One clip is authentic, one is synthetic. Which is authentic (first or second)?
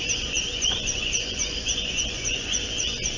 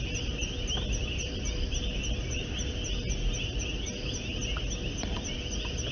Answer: second